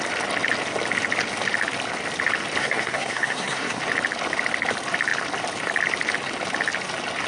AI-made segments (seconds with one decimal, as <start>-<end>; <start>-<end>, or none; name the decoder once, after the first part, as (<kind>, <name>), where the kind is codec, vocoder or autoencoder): 2.6-3.8 (codec, SNAC)